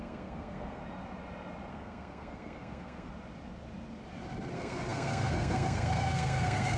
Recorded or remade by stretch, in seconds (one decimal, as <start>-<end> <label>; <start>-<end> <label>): 0.0-0.8 remade; 0.8-1.7 recorded; 1.7-3.1 remade; 3.1-4.5 recorded; 4.5-6.8 remade